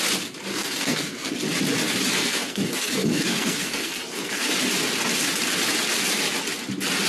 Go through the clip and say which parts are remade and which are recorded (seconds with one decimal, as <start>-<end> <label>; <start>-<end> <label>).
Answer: 0.0-0.5 recorded; 0.5-1.3 remade; 1.3-2.2 recorded; 2.2-4.5 remade; 4.5-7.1 recorded